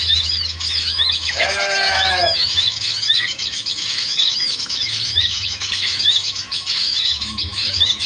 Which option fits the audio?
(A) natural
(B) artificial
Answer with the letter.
B